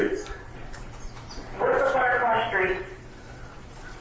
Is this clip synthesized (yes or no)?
yes